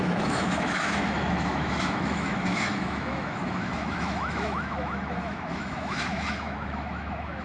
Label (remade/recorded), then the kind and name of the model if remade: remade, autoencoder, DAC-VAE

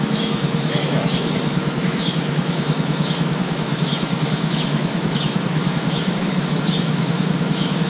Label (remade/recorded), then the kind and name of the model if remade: remade, autoencoder, DAC-VAE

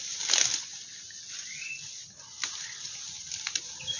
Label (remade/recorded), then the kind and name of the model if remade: recorded